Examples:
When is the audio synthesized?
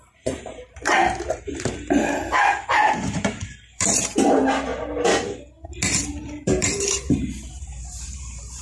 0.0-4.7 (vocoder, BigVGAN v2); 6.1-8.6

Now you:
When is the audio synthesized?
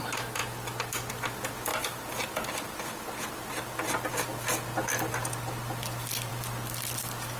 none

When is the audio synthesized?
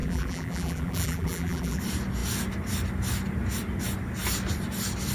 0.0-1.8 (vocoder, BigVGAN v2)